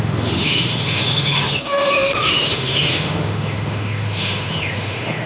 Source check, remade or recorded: remade